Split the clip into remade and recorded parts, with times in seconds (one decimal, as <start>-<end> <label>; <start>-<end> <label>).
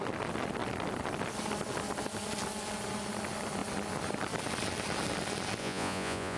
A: 0.0-5.6 recorded; 5.6-6.4 remade